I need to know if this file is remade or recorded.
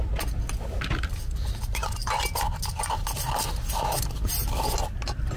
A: recorded